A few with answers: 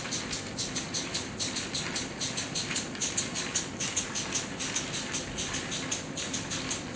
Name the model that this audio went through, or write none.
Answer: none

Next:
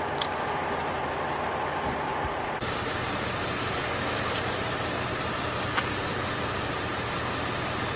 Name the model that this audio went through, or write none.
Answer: vocoder, BigVGAN v2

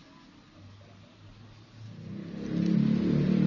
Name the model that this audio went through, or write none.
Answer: none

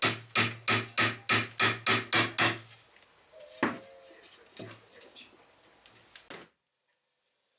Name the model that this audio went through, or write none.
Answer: none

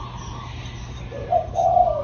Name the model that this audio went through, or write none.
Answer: none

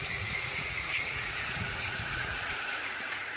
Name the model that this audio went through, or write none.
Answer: vocoder, Vocos